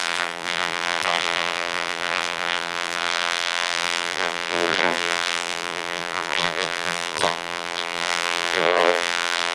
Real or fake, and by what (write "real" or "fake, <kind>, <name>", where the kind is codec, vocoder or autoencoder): fake, vocoder, BigVGAN v2